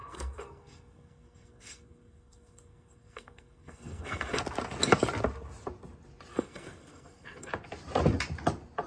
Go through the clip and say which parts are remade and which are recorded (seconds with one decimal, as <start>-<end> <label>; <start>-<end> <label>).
0.0-4.4 remade; 4.4-6.3 recorded; 6.3-7.5 remade; 7.5-8.9 recorded